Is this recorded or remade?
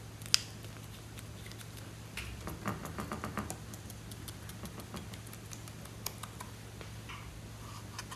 recorded